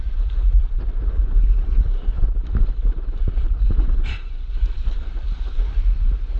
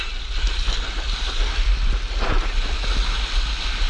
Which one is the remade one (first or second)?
first